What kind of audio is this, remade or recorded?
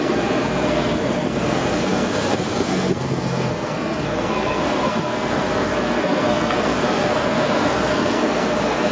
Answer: remade